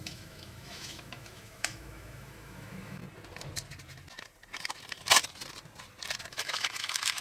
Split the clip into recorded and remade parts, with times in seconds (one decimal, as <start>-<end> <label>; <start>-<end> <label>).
0.0-3.0 remade; 3.0-6.3 recorded; 6.3-7.2 remade